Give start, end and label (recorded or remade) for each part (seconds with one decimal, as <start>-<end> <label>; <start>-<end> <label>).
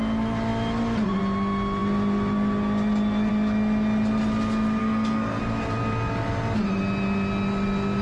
0.0-4.8 recorded; 4.8-5.4 remade; 5.4-8.0 recorded